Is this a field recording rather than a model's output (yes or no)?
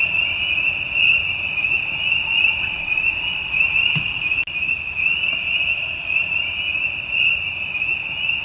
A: yes